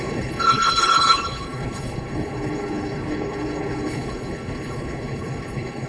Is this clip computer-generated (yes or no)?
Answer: yes